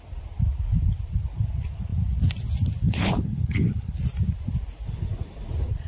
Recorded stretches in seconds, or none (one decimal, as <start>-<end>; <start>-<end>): 0.0-2.8; 4.0-5.9